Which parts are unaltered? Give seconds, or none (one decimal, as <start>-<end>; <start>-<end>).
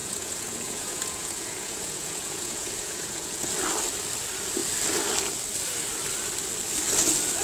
3.5-7.4